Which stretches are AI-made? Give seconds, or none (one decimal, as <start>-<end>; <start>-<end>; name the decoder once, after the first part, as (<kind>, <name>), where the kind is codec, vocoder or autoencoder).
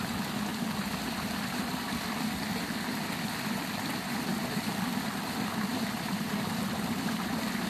none